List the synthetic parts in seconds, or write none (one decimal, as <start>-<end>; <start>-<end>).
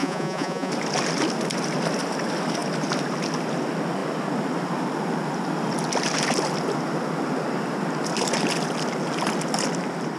0.0-0.7